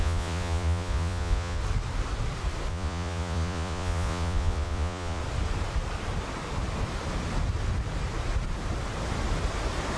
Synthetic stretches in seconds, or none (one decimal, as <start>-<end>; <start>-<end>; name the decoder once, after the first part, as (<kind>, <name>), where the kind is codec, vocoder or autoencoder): 0.0-1.6 (vocoder, Vocos); 2.7-5.2